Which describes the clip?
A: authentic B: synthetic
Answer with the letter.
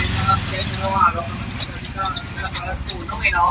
A